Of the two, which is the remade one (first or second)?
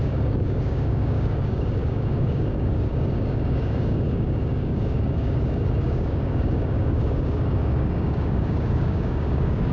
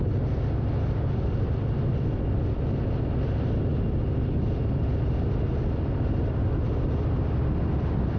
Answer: first